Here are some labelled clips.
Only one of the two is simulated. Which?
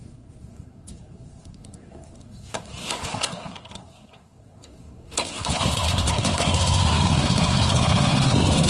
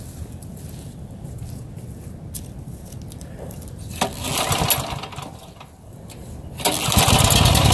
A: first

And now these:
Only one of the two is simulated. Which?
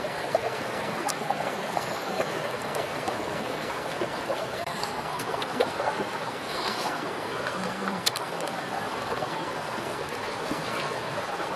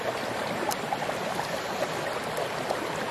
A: first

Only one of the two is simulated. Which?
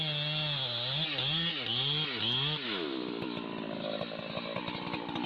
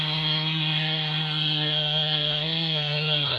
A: second